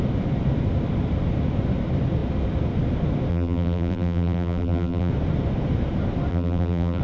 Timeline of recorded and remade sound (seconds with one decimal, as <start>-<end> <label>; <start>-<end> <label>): 0.0-3.3 recorded; 3.3-5.1 remade; 5.1-6.3 recorded; 6.3-7.0 remade